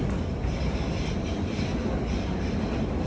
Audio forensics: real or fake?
real